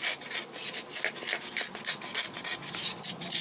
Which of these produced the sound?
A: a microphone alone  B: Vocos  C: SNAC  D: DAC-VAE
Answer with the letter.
A